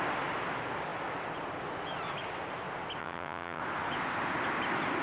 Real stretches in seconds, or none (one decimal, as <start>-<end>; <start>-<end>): 0.0-3.0; 3.6-5.0